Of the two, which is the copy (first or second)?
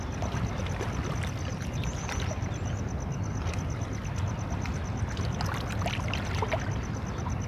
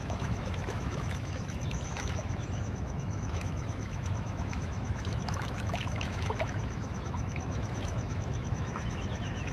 second